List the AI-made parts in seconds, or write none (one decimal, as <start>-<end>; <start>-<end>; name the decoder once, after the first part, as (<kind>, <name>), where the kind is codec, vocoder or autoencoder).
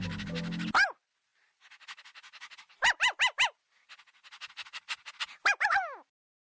none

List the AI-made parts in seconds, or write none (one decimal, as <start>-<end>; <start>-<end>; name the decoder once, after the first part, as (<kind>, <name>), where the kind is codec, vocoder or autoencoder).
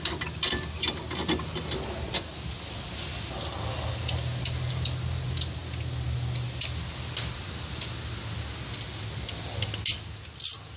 none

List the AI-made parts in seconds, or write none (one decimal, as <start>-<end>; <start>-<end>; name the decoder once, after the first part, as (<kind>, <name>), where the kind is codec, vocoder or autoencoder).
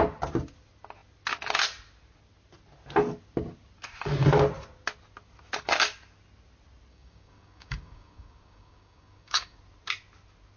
6.9-9.6 (codec, DAC)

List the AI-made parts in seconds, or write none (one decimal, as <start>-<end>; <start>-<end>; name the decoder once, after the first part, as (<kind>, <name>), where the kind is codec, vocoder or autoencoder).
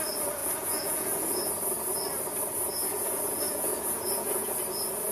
0.4-1.5 (vocoder, Vocos); 2.8-4.6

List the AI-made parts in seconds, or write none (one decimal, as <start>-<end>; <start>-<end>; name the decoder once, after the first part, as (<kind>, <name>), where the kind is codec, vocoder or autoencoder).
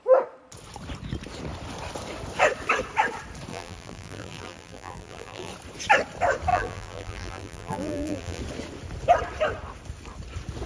3.5-5.5 (vocoder, BigVGAN v2); 6.5-8.4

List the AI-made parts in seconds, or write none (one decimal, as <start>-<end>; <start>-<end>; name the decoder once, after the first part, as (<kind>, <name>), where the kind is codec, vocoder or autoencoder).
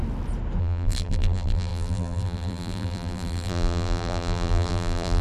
0.6-5.2 (vocoder, BigVGAN v2)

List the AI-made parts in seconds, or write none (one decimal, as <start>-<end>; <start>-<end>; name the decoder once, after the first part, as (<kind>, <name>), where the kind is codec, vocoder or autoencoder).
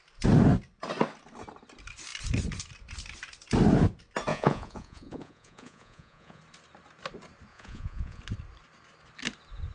4.3-6.4 (vocoder, Vocos); 7.5-8.2